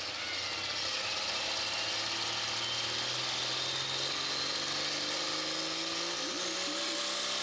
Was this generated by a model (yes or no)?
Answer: no